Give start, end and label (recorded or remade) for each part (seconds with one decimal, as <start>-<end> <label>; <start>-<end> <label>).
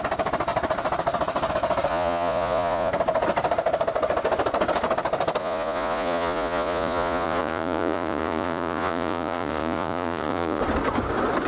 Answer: 0.0-1.9 recorded; 1.9-2.9 remade; 2.9-5.4 recorded; 5.4-10.6 remade; 10.6-11.5 recorded